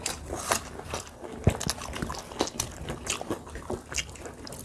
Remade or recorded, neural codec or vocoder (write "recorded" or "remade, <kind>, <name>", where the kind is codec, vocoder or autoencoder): recorded